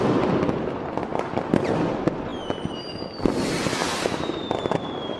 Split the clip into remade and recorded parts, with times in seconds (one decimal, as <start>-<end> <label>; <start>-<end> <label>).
0.0-5.2 recorded